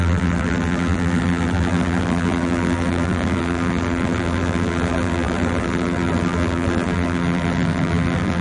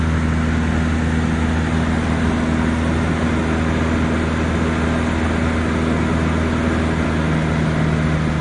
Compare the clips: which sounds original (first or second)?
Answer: second